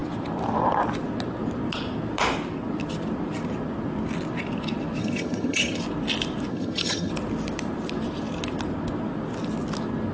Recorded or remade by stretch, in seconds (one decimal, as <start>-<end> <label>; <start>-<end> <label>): 0.0-5.0 recorded; 5.0-5.8 remade; 5.8-6.5 recorded; 6.5-7.1 remade; 7.1-10.1 recorded